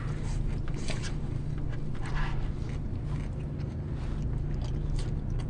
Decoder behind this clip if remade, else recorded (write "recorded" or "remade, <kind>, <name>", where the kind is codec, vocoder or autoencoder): recorded